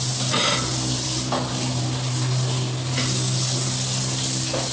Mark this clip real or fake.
real